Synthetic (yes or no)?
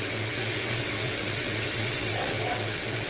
yes